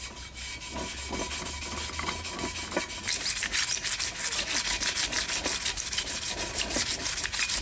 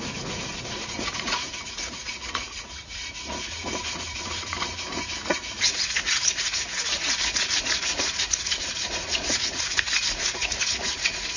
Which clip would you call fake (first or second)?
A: second